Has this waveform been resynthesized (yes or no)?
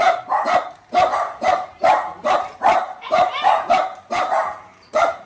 yes